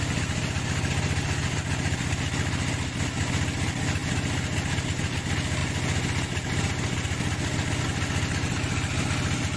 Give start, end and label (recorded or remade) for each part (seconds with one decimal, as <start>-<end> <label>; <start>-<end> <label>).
0.0-9.6 recorded